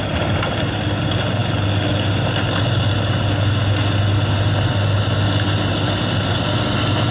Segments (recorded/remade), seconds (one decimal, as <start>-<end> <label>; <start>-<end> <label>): 0.0-7.1 recorded